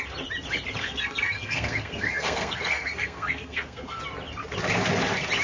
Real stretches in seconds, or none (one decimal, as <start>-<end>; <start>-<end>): 0.0-0.8; 4.0-5.4